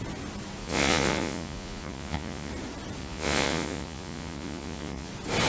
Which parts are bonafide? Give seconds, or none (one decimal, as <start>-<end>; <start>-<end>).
0.0-0.6; 2.5-3.0; 5.1-5.5